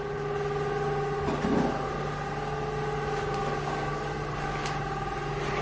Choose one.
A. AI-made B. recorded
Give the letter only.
B